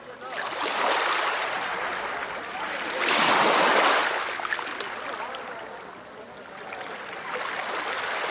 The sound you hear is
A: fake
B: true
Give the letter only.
B